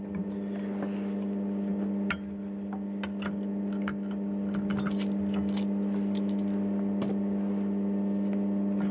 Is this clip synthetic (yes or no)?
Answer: no